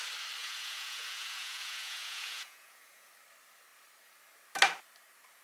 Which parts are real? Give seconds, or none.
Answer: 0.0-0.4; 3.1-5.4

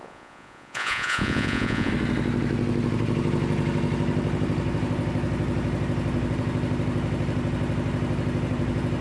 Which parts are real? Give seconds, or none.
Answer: 1.9-9.0